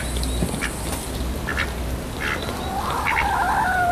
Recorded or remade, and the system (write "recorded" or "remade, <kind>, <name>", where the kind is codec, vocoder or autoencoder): recorded